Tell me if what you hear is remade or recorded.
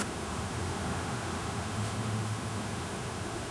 remade